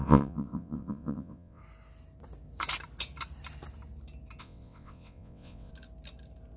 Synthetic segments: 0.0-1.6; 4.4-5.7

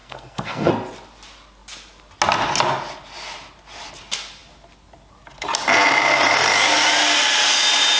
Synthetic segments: 0.0-0.7

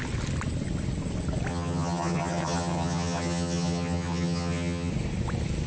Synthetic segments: 1.5-4.9

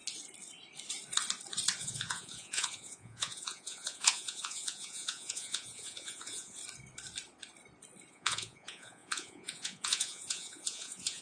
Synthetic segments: 1.8-6.6; 8.1-11.2

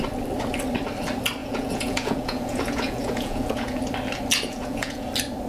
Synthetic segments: 1.4-3.8; 4.5-5.1

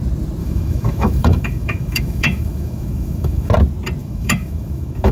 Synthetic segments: 0.4-3.5; 4.0-5.1

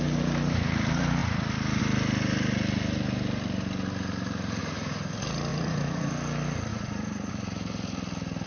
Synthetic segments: 4.6-5.1; 5.5-6.1; 6.7-7.3

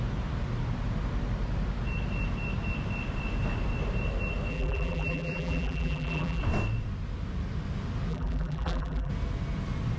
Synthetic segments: 4.5-6.4; 8.1-9.1